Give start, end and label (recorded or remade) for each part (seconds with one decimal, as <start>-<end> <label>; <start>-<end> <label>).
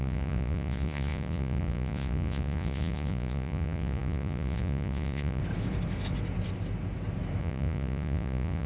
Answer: 0.0-5.4 remade; 5.4-7.4 recorded; 7.4-8.7 remade